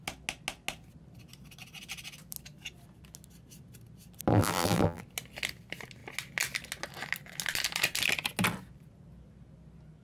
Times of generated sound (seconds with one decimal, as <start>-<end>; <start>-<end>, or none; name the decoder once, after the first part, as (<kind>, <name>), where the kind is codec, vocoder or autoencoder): 4.3-5.0 (vocoder, BigVGAN v2)